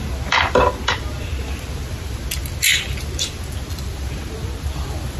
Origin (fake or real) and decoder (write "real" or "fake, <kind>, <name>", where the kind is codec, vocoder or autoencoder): real